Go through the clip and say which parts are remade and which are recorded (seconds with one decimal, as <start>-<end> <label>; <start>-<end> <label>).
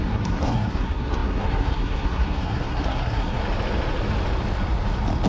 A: 0.0-3.4 remade; 3.4-5.3 recorded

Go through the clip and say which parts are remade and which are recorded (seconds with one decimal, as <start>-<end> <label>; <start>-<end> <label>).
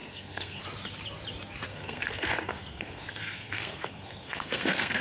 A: 0.0-0.6 remade; 0.6-1.7 recorded; 1.7-5.0 remade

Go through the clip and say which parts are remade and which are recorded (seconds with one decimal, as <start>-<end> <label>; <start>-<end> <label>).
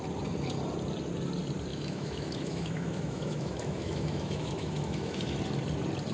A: 0.0-1.7 recorded; 1.7-5.4 remade; 5.4-6.1 recorded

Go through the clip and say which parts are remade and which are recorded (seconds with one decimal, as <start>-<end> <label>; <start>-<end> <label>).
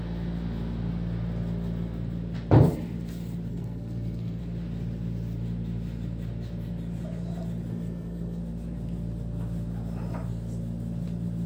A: 0.0-3.5 recorded; 3.5-4.4 remade; 4.4-7.7 recorded; 7.7-8.4 remade; 8.4-11.5 recorded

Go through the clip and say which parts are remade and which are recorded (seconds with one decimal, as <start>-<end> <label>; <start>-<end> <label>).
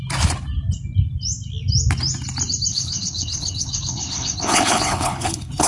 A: 0.0-2.7 recorded; 2.7-5.7 remade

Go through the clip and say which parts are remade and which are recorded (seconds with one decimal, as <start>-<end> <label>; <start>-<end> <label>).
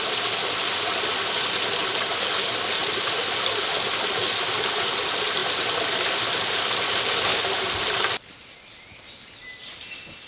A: 0.0-10.3 recorded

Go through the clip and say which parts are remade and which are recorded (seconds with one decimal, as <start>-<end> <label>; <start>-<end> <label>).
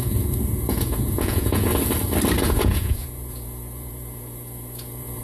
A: 0.0-1.7 remade; 1.7-2.5 recorded; 2.5-5.2 remade